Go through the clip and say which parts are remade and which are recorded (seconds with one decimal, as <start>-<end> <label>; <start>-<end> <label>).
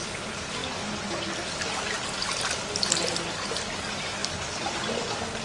0.0-4.2 recorded; 4.2-4.9 remade; 4.9-5.4 recorded